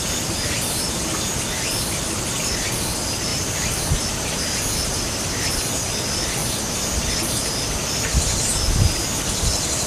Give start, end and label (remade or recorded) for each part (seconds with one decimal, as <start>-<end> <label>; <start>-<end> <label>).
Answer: 0.0-3.3 recorded; 3.3-3.8 remade; 3.8-9.9 recorded